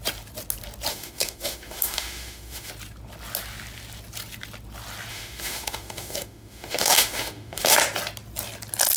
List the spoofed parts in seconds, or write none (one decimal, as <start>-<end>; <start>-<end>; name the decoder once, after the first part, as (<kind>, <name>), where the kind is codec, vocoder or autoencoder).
0.9-2.7 (autoencoder, DAC-VAE); 5.1-7.8